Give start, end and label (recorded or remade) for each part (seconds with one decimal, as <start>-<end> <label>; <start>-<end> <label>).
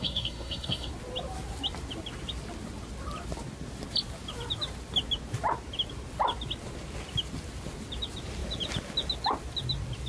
0.0-0.9 remade; 0.9-10.1 recorded